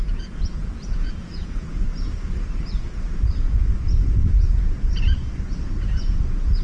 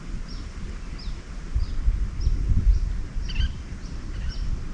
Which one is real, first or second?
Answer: second